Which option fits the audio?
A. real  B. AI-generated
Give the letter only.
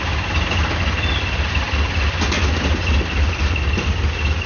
A